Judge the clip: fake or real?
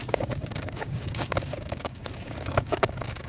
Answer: fake